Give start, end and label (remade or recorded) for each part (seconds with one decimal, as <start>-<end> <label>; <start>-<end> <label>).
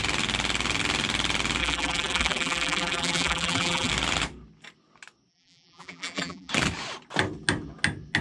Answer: 0.0-1.6 recorded; 1.6-3.9 remade; 3.9-5.3 recorded; 5.3-6.5 remade; 6.5-8.2 recorded